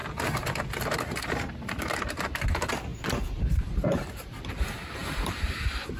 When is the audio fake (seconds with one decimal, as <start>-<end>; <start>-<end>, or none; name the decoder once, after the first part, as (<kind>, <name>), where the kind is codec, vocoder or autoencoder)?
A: 1.8-6.0 (vocoder, BigVGAN v2)